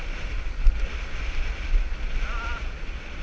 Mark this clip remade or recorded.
recorded